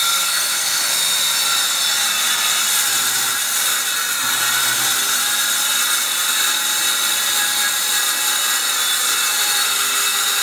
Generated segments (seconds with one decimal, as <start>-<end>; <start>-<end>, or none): 0.0-0.8